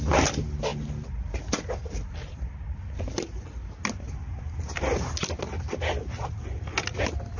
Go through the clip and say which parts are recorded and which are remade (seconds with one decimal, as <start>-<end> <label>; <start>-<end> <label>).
0.0-7.4 recorded